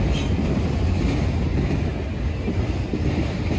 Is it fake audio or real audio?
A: real